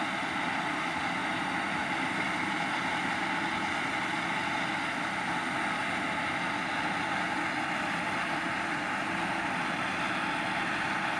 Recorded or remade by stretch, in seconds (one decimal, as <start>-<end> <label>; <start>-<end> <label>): 0.0-11.2 recorded